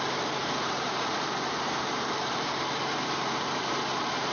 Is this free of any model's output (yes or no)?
no